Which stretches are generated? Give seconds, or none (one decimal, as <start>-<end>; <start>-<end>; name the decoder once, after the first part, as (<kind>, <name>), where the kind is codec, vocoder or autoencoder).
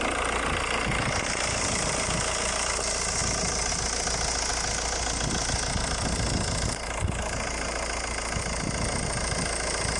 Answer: none